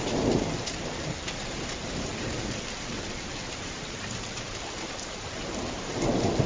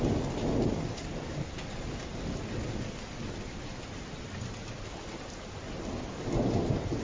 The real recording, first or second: second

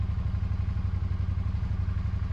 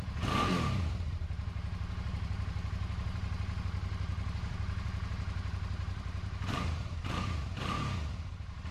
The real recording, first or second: first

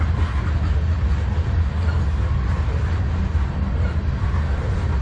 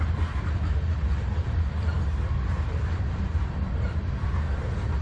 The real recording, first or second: first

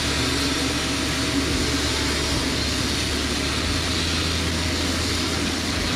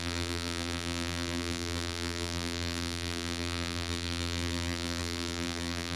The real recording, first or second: first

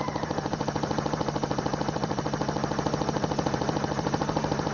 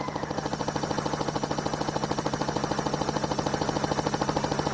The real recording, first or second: second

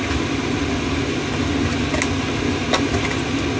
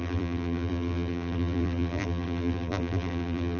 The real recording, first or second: first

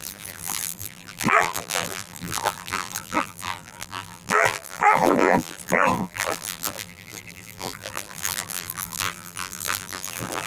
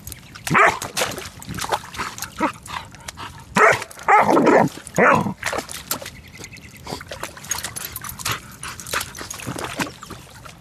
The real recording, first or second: second